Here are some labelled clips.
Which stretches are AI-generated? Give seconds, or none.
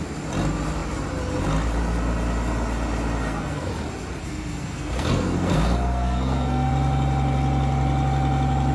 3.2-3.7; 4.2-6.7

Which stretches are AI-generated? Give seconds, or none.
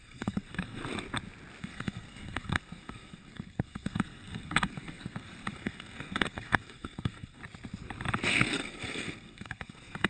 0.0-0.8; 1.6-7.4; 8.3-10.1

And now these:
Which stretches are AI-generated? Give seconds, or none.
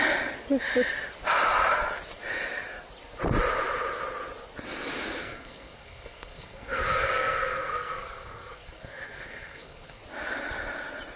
5.2-10.0